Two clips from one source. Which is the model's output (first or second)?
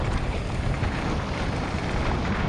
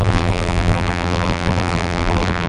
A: second